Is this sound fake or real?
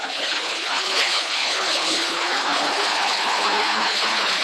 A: fake